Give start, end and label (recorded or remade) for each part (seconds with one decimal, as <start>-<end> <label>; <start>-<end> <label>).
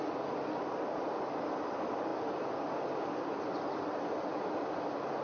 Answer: 0.0-5.2 recorded